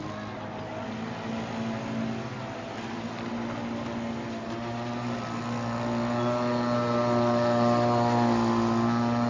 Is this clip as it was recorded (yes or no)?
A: yes